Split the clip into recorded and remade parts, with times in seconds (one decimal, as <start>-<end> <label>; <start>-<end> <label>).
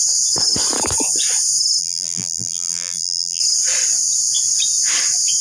0.0-1.8 recorded; 1.8-3.4 remade; 3.4-5.4 recorded